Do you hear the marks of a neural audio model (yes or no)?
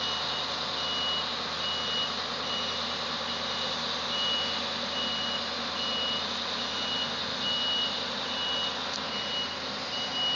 no